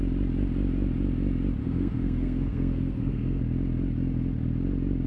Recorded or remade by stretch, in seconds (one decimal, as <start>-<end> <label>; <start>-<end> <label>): 0.0-1.6 recorded; 1.6-3.4 remade; 3.4-5.1 recorded